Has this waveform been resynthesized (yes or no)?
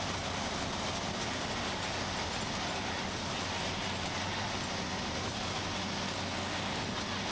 no